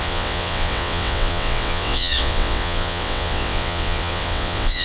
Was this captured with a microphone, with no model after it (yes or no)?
no